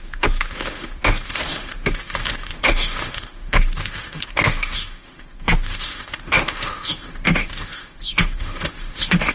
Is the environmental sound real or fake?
fake